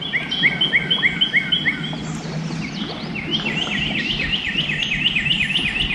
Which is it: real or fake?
real